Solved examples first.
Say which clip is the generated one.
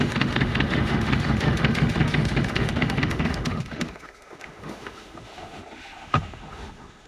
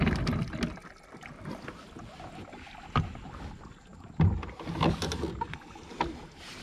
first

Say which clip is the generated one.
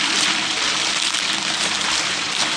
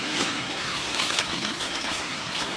second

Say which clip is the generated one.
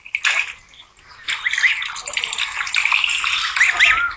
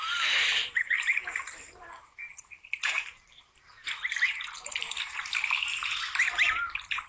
second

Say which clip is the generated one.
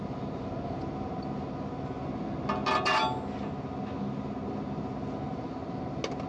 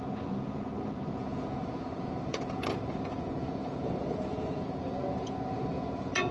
second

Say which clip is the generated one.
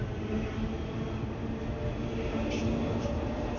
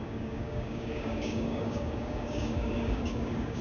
second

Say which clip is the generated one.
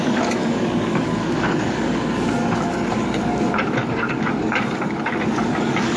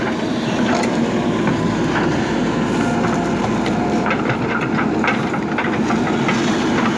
first